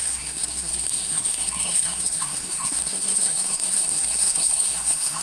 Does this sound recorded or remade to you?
remade